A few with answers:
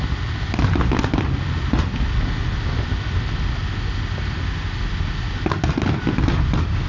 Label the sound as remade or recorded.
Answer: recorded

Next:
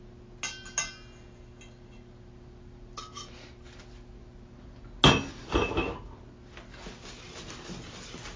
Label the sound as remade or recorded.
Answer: recorded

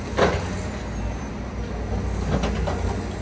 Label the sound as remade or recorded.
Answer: recorded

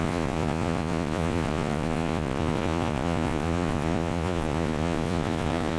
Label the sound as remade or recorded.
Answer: remade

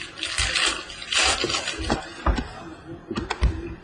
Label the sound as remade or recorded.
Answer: recorded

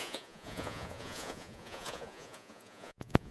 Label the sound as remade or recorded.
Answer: remade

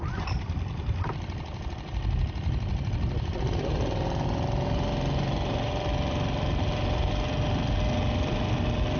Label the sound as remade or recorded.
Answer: recorded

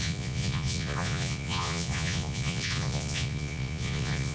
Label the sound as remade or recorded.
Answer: remade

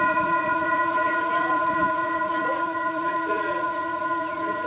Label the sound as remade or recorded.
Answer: remade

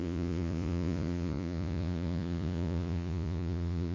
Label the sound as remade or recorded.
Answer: remade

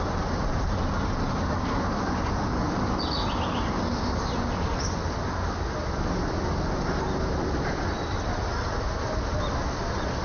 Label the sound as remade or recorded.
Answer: recorded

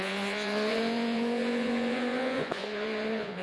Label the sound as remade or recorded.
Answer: remade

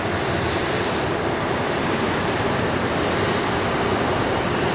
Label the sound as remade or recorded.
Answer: recorded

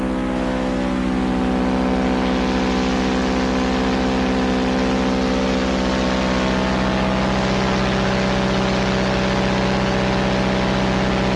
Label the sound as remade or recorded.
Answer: recorded